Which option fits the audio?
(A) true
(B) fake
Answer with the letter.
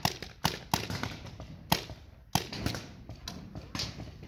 A